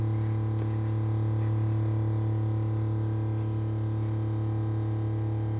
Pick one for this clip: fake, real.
real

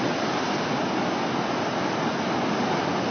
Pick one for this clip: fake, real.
real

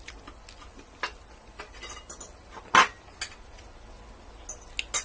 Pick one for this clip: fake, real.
real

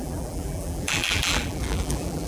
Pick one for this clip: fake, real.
fake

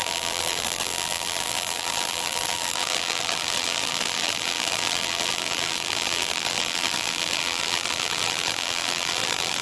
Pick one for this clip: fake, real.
fake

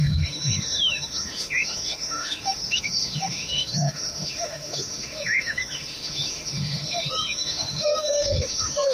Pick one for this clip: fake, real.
fake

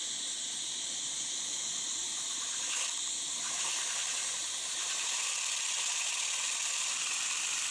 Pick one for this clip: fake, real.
real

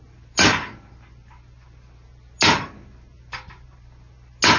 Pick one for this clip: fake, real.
real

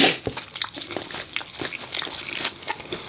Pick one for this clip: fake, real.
real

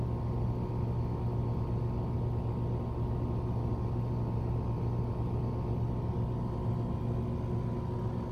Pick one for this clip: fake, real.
real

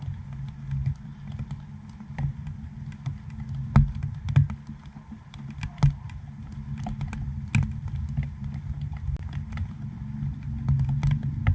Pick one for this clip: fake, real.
real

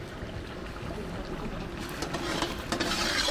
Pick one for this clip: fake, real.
real